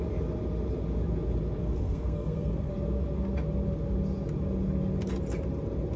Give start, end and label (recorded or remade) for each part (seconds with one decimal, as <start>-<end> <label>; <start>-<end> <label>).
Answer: 0.0-1.6 recorded; 1.6-2.7 remade; 2.7-6.0 recorded